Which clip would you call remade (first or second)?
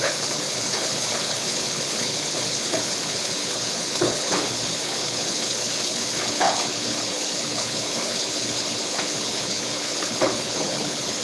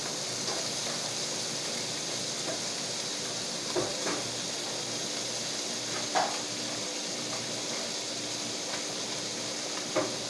first